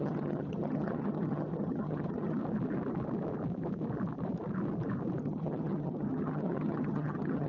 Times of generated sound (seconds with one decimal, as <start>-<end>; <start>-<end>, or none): 0.0-2.4; 5.2-7.5